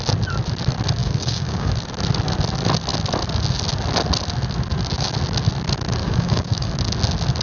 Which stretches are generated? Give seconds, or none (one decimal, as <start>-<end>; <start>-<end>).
1.0-1.7; 6.0-6.7